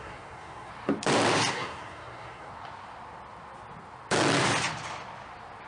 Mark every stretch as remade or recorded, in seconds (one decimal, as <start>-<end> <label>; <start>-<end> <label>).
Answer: 0.0-0.7 remade; 0.7-1.5 recorded; 1.5-2.5 remade; 2.5-5.7 recorded